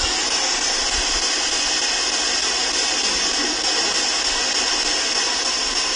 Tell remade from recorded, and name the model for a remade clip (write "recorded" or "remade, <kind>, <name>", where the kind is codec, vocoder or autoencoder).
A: recorded